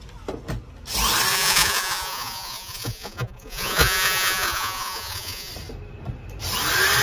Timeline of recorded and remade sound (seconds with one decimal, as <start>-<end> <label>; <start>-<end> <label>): 0.0-1.3 recorded; 1.3-5.5 remade; 5.5-7.0 recorded